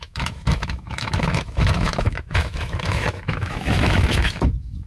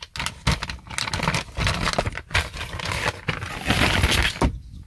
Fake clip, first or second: first